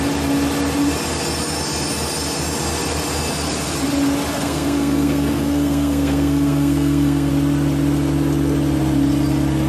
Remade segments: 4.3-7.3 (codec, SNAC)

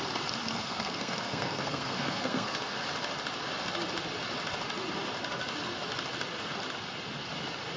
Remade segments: 0.5-2.5 (codec, SNAC)

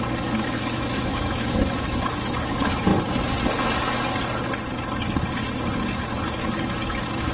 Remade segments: 0.0-2.9 (autoencoder, DAC-VAE); 6.4-7.3

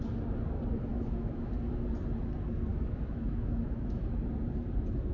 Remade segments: 0.9-1.5 (autoencoder, DAC-VAE); 2.7-4.0

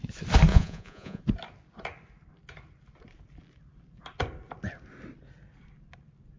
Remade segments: 0.5-1.2 (vocoder, Vocos)

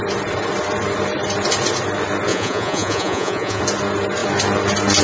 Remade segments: 2.3-3.6 (vocoder, Vocos)

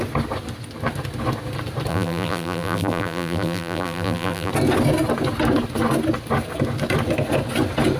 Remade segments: 1.9-4.5 (vocoder, BigVGAN v2)

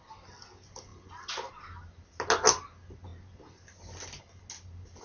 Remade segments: none